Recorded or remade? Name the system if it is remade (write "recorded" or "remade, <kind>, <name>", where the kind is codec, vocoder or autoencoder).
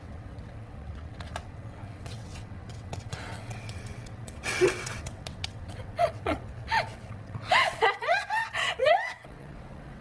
remade, vocoder, WaveNeXt